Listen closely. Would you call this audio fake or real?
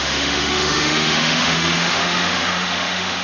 fake